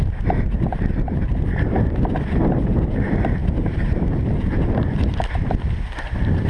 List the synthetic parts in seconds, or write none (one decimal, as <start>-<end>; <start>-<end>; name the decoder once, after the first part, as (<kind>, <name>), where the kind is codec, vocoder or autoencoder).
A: none